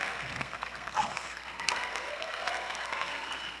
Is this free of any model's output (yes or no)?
no